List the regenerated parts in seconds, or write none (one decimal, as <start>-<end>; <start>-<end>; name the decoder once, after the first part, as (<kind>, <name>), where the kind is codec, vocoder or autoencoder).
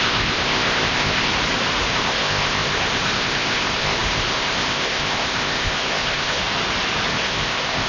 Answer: 0.0-1.3 (codec, ZipCodec); 1.9-6.4; 7.1-7.9